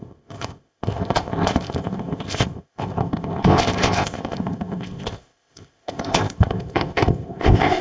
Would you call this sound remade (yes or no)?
yes